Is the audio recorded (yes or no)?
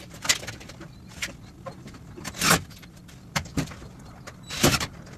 no